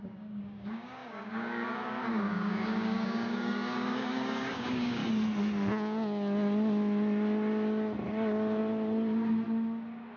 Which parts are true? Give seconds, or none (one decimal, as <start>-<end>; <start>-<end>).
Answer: 5.0-10.2